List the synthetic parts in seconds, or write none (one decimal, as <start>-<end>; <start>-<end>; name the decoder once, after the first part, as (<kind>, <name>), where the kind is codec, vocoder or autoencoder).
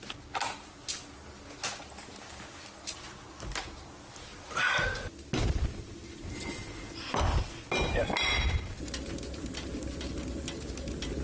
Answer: none